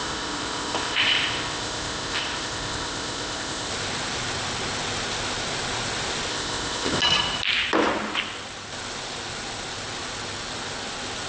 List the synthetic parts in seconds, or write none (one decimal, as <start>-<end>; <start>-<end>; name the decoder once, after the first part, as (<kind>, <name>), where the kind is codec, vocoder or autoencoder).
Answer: 0.0-3.7 (codec, ZipCodec); 6.3-7.0